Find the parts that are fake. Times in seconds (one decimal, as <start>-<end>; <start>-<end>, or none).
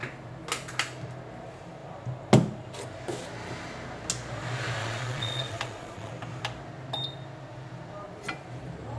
4.8-6.1